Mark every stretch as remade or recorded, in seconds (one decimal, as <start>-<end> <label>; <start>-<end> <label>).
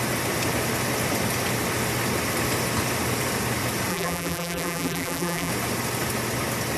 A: 0.0-3.9 recorded; 3.9-5.5 remade; 5.5-6.8 recorded